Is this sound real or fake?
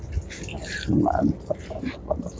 real